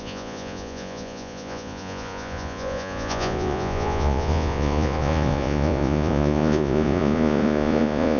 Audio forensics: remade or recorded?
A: remade